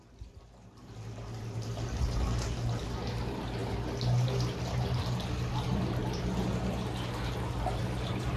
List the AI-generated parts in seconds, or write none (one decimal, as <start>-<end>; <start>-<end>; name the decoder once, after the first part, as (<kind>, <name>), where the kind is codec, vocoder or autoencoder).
none